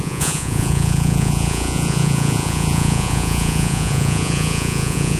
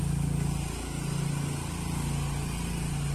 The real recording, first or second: second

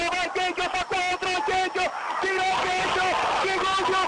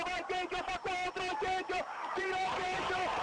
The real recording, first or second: first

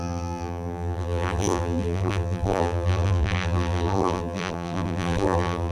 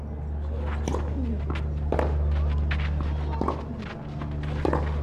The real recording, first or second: second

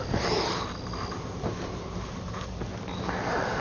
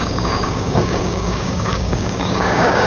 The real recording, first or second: first